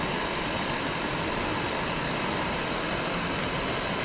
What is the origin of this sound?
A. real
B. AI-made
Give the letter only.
A